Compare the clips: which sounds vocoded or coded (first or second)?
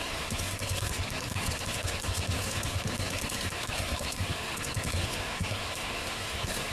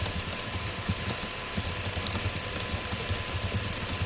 first